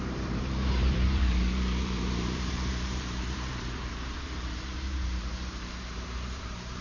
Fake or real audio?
fake